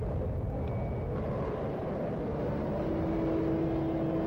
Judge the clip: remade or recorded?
recorded